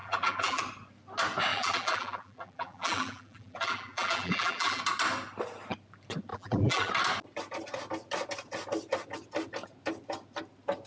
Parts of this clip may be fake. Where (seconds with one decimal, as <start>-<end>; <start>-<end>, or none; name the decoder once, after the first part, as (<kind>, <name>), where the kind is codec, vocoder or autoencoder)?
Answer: 0.0-0.6 (vocoder, BigVGAN v2); 1.5-4.8; 6.3-6.9